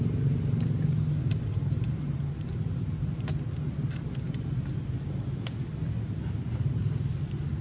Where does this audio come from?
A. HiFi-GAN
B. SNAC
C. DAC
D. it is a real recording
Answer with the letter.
D